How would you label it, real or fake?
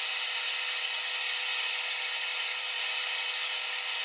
real